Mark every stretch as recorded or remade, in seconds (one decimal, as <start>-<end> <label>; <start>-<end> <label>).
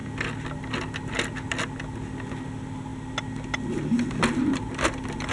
0.0-5.3 recorded